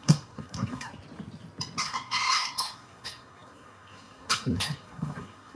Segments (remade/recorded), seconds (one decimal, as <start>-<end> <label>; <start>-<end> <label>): 0.0-0.9 remade; 0.9-1.8 recorded; 1.8-5.6 remade

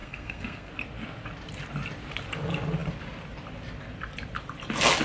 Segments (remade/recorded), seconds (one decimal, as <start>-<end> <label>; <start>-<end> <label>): 0.0-0.7 remade; 0.7-5.0 recorded